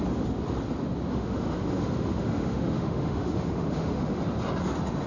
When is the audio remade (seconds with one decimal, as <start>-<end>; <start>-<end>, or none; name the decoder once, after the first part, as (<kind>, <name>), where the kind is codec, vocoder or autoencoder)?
1.1-4.2 (autoencoder, DAC-VAE)